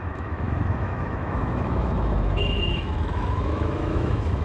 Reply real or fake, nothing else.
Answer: fake